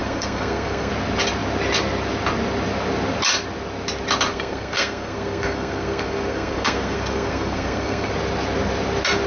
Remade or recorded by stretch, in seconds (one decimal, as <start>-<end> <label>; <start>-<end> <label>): 0.0-0.9 remade; 0.9-4.3 recorded; 4.3-8.1 remade; 8.1-9.3 recorded